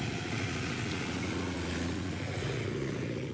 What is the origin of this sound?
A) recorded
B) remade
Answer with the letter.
B